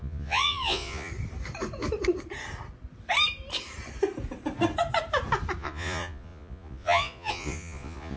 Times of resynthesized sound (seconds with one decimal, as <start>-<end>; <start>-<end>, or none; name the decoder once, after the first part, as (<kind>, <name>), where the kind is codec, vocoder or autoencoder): 0.0-1.1 (vocoder, Vocos); 5.6-8.2